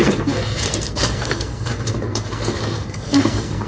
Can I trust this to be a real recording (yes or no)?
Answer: no